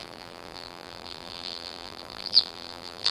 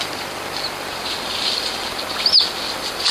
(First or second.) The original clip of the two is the second